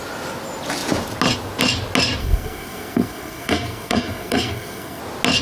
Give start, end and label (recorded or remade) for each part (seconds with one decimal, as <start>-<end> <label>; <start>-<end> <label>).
0.0-2.2 recorded; 2.2-5.0 remade; 5.0-5.4 recorded